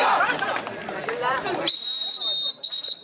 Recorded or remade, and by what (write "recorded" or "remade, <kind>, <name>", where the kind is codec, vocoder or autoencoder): remade, vocoder, BigVGAN v2